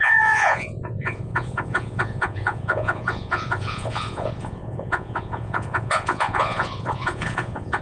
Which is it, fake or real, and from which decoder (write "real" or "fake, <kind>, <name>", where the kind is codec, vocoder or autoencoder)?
fake, vocoder, Vocos